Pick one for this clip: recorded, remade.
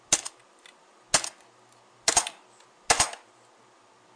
recorded